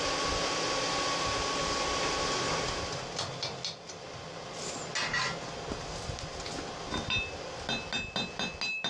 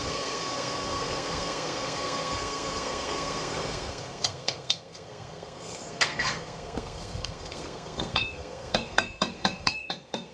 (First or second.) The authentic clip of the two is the first